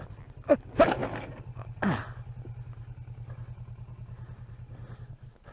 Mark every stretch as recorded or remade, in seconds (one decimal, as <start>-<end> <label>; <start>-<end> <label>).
0.0-5.5 recorded